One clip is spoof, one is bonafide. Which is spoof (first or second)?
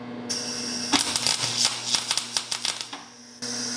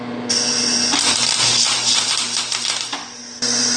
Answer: second